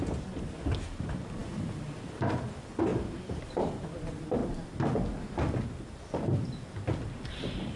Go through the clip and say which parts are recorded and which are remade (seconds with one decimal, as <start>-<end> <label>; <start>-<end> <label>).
0.0-2.9 recorded; 2.9-3.9 remade; 3.9-7.8 recorded